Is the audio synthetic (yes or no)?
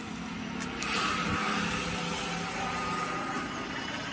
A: no